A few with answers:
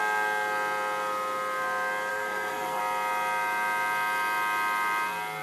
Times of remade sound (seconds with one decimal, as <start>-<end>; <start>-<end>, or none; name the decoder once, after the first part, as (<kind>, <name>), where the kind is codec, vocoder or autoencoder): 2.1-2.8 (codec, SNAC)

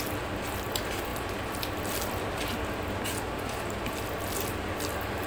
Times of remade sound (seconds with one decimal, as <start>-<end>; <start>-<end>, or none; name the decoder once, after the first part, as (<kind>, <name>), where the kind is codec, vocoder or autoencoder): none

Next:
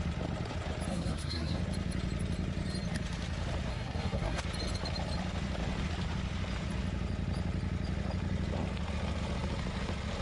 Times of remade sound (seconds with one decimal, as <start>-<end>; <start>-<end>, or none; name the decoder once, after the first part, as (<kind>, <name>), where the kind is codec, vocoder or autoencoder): 0.9-1.6 (codec, SNAC); 3.7-4.4

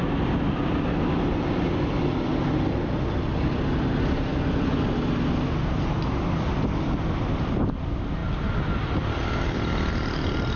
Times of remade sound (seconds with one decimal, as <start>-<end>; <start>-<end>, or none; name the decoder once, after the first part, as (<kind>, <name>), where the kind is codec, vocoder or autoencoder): none